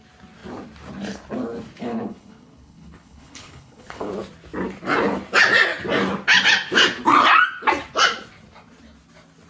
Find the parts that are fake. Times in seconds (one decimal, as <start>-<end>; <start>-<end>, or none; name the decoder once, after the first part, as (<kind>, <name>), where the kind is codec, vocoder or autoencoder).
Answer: 1.8-4.1 (codec, HILCodec)